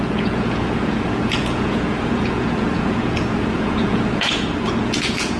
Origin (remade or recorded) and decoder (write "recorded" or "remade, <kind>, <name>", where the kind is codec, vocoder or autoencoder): remade, vocoder, Vocos